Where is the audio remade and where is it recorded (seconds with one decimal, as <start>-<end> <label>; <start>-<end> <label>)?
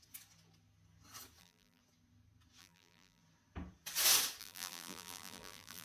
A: 0.0-1.4 recorded; 1.4-1.8 remade; 1.8-2.6 recorded; 2.6-3.2 remade; 3.2-4.4 recorded; 4.4-5.8 remade